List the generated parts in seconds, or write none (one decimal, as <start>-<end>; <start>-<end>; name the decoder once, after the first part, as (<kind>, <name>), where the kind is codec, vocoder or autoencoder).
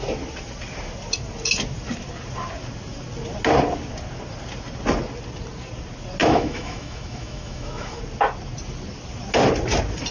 6.2-8.0 (autoencoder, DAC-VAE)